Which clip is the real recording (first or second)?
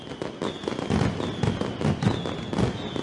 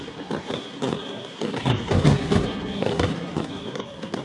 first